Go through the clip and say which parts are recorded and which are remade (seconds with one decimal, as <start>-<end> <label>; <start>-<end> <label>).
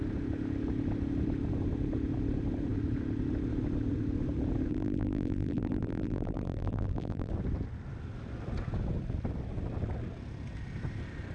0.0-4.7 recorded; 4.7-7.3 remade; 7.3-11.3 recorded